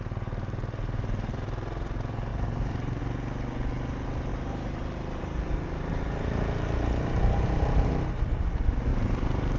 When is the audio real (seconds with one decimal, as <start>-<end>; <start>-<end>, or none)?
0.0-2.3; 3.0-4.3; 7.9-8.9